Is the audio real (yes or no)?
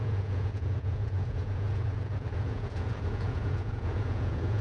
no